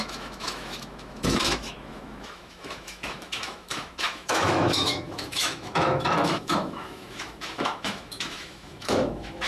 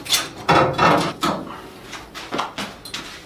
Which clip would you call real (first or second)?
second